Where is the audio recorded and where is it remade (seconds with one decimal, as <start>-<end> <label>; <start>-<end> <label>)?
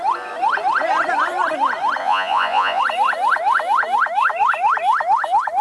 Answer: 0.0-2.0 recorded; 2.0-2.8 remade; 2.8-5.6 recorded